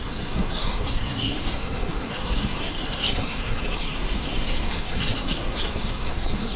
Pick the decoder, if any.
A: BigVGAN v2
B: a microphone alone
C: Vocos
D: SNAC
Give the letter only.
D